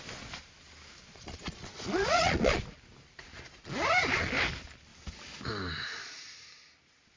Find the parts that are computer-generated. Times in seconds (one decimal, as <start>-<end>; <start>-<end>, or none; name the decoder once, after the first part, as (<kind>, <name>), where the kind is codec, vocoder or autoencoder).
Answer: 1.1-2.6 (vocoder, Vocos)